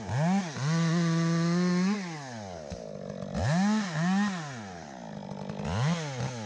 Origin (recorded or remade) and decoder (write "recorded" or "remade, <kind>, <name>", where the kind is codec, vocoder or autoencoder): recorded